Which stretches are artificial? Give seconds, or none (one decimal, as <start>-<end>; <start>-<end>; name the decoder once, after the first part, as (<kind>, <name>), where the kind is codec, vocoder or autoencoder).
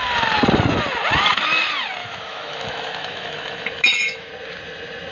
2.0-4.3 (autoencoder, DAC-VAE)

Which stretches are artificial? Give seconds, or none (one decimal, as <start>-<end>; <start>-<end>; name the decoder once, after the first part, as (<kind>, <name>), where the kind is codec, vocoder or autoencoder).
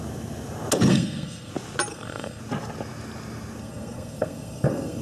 0.9-1.5 (codec, SNAC); 1.9-2.4; 3.6-5.0